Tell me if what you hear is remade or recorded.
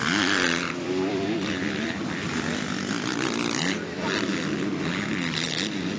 remade